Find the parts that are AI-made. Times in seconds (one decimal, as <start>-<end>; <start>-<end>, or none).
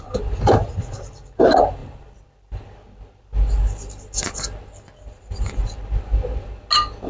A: none